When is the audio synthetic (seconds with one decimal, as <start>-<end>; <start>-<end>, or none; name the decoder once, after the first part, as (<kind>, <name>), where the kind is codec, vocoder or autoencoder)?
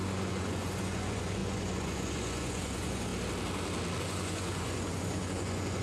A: 0.0-3.1 (vocoder, Vocos); 4.0-5.8